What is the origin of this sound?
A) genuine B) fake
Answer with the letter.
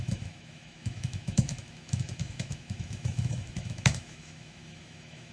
B